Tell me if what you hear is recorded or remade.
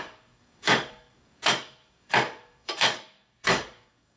remade